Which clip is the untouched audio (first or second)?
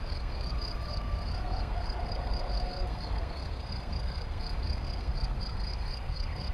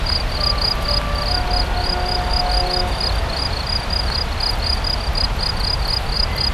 second